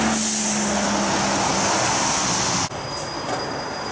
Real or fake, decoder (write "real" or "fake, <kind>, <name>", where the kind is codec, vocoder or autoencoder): real